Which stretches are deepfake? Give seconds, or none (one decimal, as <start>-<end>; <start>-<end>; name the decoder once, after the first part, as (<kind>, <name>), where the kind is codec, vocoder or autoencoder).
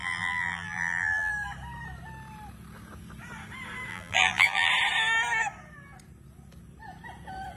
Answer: 0.0-1.3 (vocoder, BigVGAN v2); 3.9-4.7